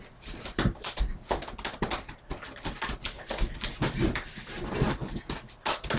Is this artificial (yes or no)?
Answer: no